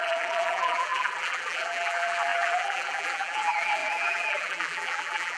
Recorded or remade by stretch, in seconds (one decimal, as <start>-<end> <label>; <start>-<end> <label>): 0.0-5.4 remade